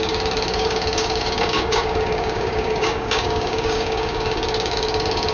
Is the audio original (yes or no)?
no